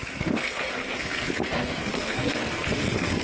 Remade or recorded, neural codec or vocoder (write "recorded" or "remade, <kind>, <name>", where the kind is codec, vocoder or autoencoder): remade, codec, SNAC